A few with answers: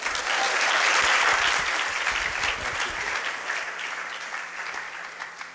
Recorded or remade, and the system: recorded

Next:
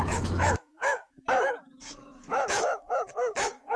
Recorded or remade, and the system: remade, autoencoder, DAC-VAE